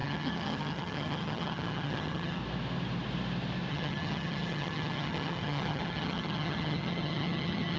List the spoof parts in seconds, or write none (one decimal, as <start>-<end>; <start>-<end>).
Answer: 0.0-2.4; 3.7-7.8